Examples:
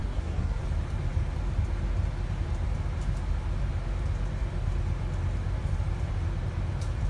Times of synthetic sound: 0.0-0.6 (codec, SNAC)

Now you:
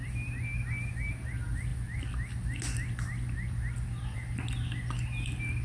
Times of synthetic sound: none

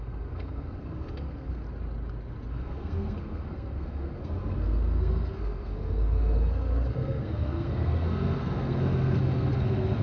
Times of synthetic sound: 0.0-1.6 (codec, SNAC); 2.5-10.0